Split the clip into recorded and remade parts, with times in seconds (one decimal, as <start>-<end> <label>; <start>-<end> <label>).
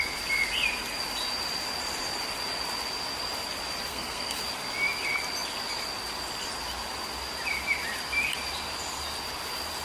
0.0-3.9 recorded; 3.9-4.4 remade; 4.4-9.8 recorded